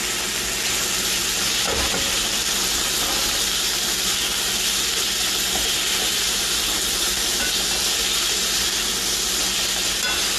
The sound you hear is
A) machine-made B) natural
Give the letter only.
B